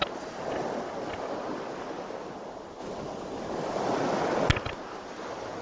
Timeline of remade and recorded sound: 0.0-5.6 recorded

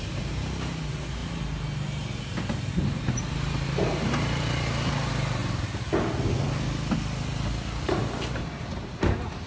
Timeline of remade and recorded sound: 0.0-1.2 remade; 1.2-2.7 recorded; 2.7-5.4 remade; 5.4-8.4 recorded; 8.4-9.5 remade

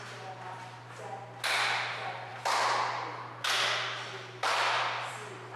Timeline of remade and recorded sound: 0.0-5.6 recorded

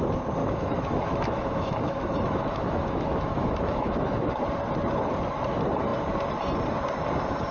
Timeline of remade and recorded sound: 0.0-0.4 recorded; 0.4-4.4 remade; 4.4-7.5 recorded

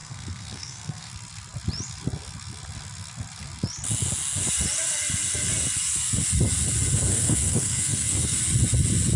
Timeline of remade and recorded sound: 0.0-1.1 remade; 1.1-7.1 recorded; 7.1-8.4 remade; 8.4-9.2 recorded

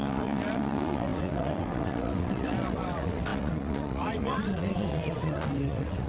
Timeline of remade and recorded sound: 0.0-6.1 remade

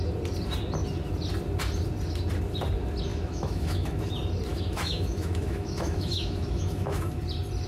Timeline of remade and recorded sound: 0.0-3.1 recorded; 3.1-4.1 remade; 4.1-4.5 recorded; 4.5-7.2 remade; 7.2-7.7 recorded

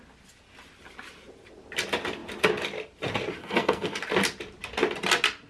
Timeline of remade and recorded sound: 0.0-3.4 recorded; 3.4-4.0 remade; 4.0-5.5 recorded